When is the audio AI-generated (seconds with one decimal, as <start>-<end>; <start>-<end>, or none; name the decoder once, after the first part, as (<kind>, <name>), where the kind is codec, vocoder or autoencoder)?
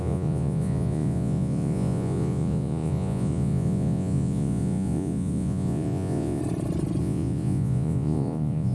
0.0-6.4 (vocoder, Vocos); 7.0-8.7